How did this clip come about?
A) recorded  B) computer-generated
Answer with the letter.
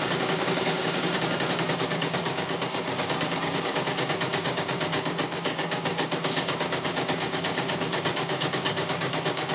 B